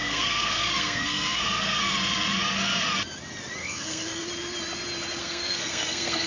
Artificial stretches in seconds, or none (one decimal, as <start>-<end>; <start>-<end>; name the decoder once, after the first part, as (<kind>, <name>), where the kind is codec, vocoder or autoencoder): 0.0-1.8 (codec, SNAC); 3.6-4.2; 5.2-6.3